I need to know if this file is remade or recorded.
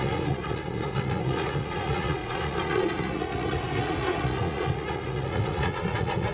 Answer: remade